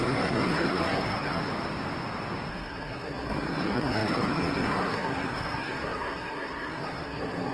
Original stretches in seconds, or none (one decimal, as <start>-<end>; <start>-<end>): 1.4-2.5